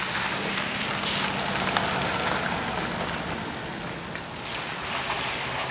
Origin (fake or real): real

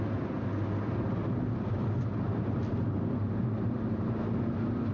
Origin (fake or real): real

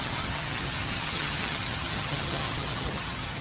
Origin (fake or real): fake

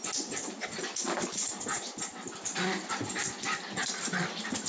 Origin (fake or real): real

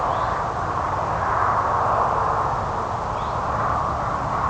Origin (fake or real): real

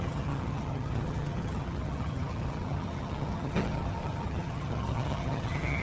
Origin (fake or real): fake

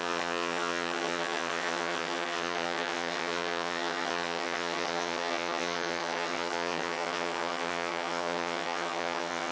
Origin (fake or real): fake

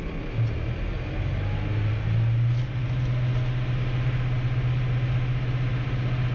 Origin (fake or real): real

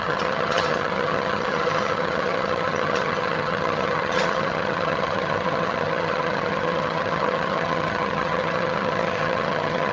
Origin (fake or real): fake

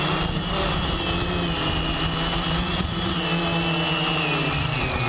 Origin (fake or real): real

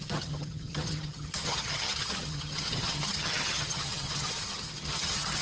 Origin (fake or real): fake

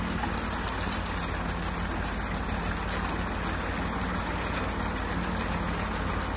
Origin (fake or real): real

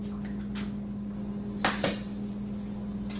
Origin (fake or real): real